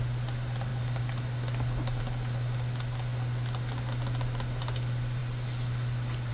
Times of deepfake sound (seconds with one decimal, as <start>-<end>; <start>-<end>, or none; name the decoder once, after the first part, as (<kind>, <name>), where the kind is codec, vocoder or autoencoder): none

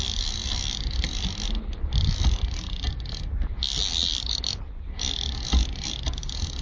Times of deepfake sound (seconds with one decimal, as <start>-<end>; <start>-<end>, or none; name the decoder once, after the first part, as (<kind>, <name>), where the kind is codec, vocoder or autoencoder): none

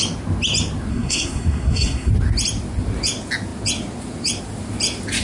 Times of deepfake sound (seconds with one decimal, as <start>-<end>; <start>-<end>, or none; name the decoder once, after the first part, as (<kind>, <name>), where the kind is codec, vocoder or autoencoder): 0.9-2.1 (codec, SNAC)